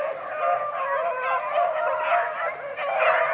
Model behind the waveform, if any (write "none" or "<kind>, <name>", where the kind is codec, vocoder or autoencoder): none